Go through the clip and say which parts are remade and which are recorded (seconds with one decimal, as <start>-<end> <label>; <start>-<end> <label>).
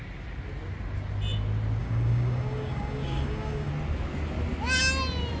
0.0-1.8 recorded; 1.8-3.7 remade; 3.7-5.4 recorded